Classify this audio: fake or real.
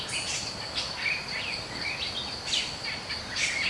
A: real